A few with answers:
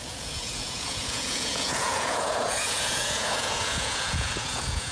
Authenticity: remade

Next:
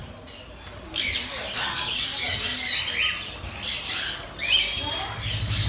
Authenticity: recorded